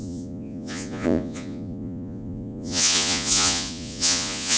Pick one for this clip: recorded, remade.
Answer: remade